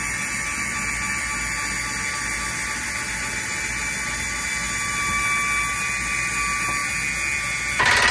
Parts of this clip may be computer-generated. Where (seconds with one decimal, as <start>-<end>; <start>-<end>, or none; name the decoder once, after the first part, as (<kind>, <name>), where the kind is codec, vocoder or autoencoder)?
none